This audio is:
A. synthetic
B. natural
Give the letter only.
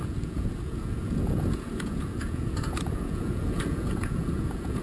A